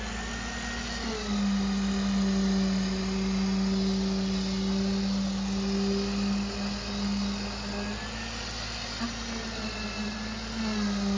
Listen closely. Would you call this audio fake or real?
real